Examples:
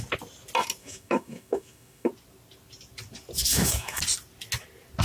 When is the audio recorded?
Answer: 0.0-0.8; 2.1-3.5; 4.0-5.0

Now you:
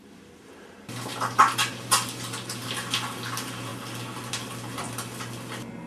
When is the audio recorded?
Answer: 0.0-5.9

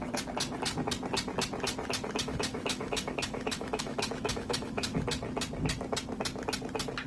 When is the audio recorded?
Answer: 0.0-2.2; 4.9-7.1

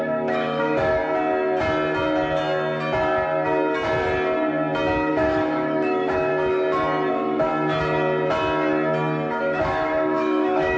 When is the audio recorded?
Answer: 1.0-5.1; 6.3-7.1; 7.5-9.4

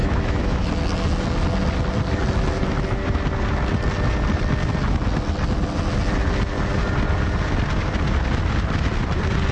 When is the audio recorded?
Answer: 0.7-9.5

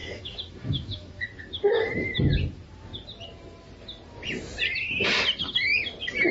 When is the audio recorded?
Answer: 1.2-6.3